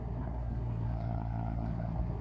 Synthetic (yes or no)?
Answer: yes